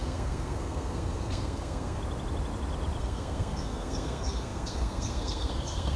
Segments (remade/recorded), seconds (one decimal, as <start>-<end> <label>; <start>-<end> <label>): 0.0-2.0 remade; 2.0-3.0 recorded; 3.0-6.0 remade